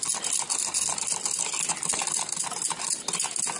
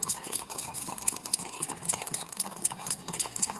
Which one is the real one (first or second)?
first